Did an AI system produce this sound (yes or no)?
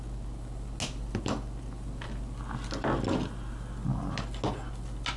no